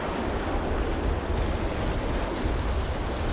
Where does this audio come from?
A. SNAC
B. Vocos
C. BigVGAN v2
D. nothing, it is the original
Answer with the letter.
D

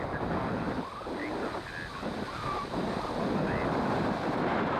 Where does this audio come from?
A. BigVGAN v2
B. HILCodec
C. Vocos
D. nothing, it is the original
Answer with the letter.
D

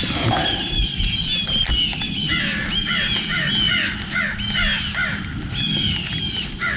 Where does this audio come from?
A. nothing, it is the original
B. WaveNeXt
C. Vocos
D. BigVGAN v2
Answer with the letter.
A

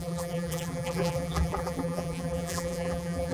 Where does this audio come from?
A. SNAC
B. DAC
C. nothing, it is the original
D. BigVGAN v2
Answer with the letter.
D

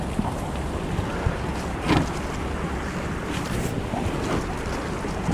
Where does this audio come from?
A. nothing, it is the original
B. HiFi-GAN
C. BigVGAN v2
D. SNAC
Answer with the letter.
A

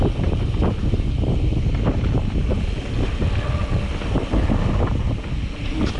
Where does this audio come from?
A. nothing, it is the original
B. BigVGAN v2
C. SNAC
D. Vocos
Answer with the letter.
A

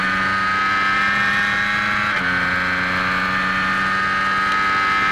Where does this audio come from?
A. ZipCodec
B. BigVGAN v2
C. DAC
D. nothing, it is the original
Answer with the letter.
D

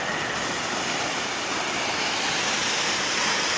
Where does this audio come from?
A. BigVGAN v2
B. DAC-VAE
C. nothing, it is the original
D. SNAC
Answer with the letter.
C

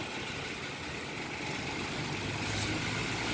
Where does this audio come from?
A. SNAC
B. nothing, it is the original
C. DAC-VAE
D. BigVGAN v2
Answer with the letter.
B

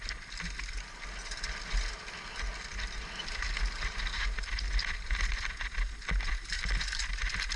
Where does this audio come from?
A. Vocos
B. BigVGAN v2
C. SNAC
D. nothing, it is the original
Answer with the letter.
D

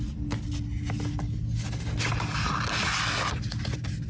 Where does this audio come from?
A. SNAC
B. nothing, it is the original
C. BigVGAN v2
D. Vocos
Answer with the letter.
B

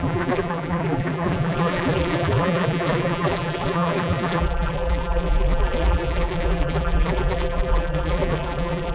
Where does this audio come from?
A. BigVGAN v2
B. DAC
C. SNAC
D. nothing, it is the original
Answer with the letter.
A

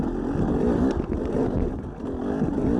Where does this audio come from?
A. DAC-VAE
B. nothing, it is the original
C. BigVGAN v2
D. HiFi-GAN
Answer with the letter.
B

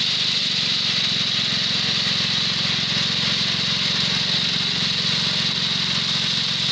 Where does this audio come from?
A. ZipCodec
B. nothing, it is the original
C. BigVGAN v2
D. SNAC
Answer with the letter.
B